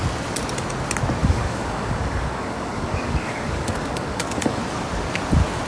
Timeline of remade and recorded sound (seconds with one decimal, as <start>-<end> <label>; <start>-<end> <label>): 0.0-1.2 recorded; 1.2-4.6 remade; 4.6-5.7 recorded